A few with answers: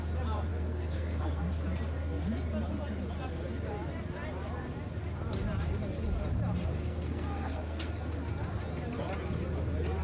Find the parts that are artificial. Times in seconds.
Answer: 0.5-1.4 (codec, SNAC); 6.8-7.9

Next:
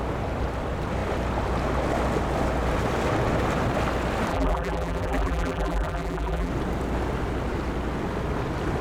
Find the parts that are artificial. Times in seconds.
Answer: 4.3-6.5 (vocoder, BigVGAN v2)

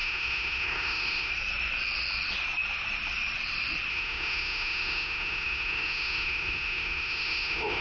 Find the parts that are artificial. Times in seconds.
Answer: 0.0-1.3 (autoencoder, DAC-VAE); 3.9-7.8

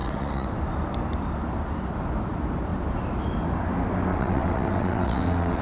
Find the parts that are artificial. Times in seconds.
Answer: 0.0-0.5 (vocoder, WaveNeXt); 4.1-5.6

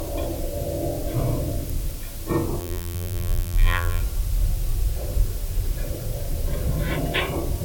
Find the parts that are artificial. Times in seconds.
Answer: 2.6-4.0 (vocoder, BigVGAN v2)

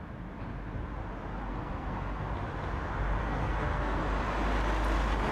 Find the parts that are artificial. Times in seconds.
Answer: 1.5-2.3 (codec, SNAC); 3.2-4.0

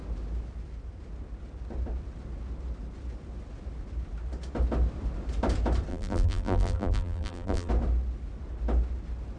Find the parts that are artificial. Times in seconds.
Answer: 5.9-7.7 (vocoder, BigVGAN v2)

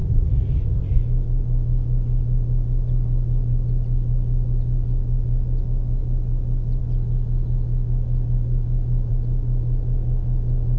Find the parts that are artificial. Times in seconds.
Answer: 0.0-1.0 (vocoder, Vocos)